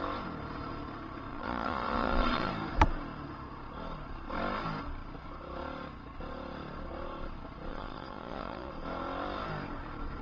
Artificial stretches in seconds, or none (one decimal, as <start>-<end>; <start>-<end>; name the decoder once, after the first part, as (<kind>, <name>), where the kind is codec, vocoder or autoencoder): 1.3-2.5 (vocoder, Vocos); 7.7-8.7

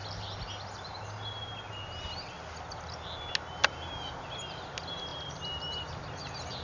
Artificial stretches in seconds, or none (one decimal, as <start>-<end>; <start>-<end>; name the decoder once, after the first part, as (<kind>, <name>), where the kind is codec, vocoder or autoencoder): none

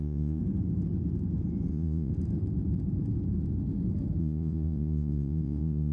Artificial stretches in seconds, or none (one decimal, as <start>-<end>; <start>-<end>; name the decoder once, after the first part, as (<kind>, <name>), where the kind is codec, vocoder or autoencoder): 0.0-0.4 (vocoder, Vocos); 1.7-2.1; 4.2-5.9

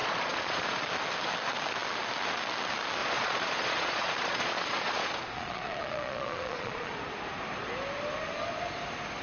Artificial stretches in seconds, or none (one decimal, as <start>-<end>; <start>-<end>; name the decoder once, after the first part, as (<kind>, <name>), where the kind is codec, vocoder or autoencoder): 0.0-0.8 (vocoder, Vocos); 3.0-6.9

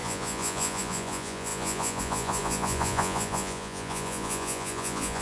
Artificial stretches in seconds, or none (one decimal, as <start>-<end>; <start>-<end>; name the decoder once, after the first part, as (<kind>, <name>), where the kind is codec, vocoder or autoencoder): 0.0-5.2 (vocoder, Vocos)

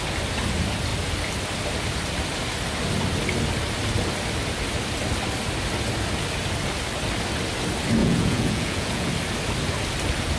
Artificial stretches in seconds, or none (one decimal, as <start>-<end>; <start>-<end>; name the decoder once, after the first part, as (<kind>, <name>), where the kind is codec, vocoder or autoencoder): 8.0-9.1 (vocoder, Vocos)